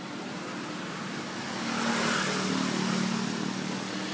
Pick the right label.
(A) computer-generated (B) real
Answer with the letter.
B